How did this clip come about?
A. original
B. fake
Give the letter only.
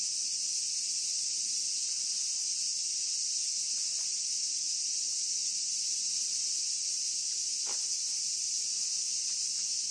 A